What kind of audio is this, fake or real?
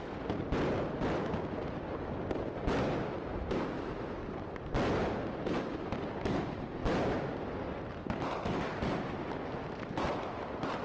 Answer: real